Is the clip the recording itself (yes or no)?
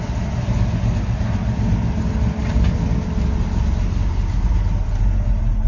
yes